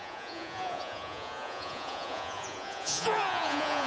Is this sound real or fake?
fake